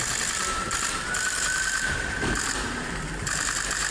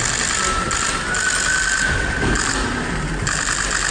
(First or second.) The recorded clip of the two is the second